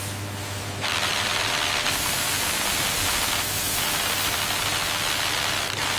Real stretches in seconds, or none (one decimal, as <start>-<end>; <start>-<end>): 0.0-6.0